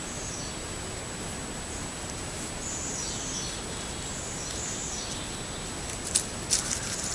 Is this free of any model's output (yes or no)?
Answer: yes